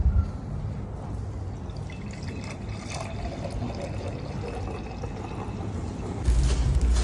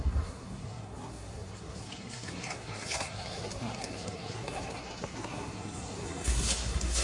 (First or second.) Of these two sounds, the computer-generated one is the second